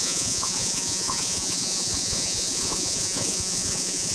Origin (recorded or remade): remade